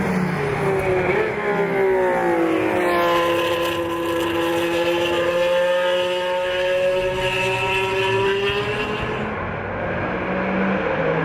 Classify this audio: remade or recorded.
recorded